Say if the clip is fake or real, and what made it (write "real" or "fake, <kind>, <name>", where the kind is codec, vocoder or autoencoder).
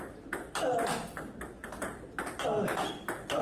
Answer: real